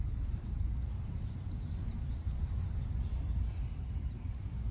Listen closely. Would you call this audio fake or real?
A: real